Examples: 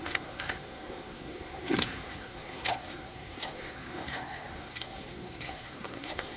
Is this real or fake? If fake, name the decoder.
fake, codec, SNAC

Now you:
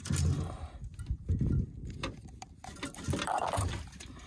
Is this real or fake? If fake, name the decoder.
real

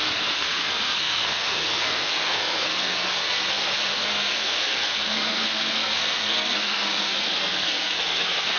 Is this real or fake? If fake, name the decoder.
fake, codec, SNAC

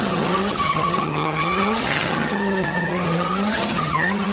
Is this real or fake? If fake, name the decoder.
fake, vocoder, HiFi-GAN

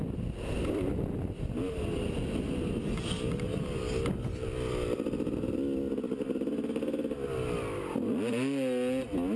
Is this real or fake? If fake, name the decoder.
real